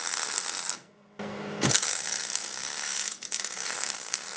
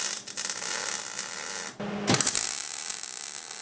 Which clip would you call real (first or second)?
second